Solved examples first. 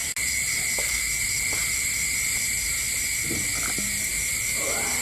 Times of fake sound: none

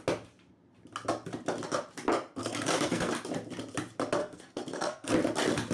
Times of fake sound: 2.4-3.1 (codec, SNAC); 4.2-5.1

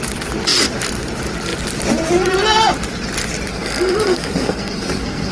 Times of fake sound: 3.5-5.3 (codec, SNAC)